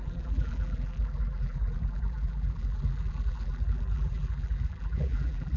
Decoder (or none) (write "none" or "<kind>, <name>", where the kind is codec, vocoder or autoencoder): vocoder, BigVGAN v2